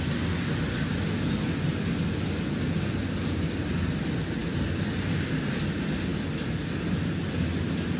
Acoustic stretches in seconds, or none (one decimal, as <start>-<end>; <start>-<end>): 0.0-8.0